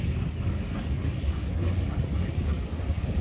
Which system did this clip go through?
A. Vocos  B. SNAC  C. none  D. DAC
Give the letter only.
D